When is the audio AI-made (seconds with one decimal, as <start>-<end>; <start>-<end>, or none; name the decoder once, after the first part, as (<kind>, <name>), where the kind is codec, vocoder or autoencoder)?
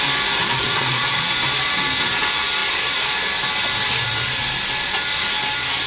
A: 0.4-1.3 (vocoder, Vocos)